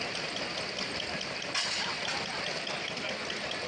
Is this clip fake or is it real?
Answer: real